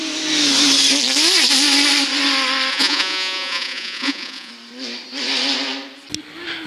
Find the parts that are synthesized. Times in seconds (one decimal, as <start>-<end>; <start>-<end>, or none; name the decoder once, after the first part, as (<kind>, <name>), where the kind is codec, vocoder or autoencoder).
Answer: 2.7-4.5 (vocoder, Vocos)